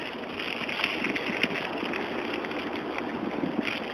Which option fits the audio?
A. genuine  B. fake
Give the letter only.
A